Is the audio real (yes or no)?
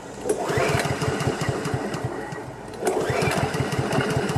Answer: yes